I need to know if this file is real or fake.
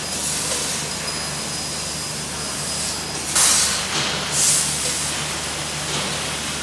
real